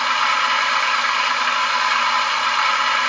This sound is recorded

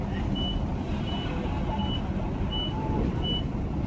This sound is recorded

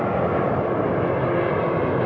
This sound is recorded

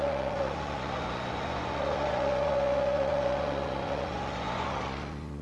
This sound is remade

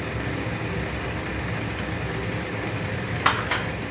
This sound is recorded